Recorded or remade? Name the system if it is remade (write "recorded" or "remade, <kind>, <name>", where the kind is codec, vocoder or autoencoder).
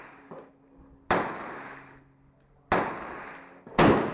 recorded